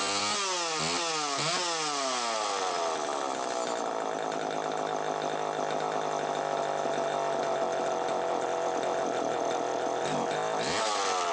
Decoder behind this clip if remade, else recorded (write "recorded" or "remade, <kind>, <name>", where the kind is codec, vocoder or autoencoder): recorded